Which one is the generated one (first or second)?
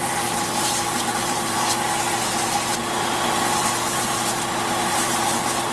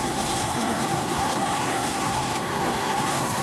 second